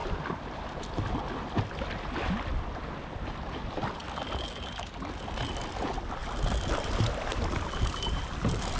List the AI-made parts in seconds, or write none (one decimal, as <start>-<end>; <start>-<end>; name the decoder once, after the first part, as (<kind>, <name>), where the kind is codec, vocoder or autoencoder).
none